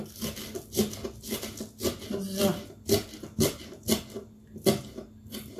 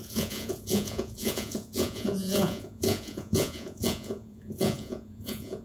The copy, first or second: second